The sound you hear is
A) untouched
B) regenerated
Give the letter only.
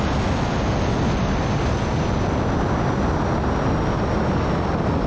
A